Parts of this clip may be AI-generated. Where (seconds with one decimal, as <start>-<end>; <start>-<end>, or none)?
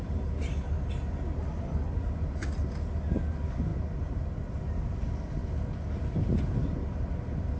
none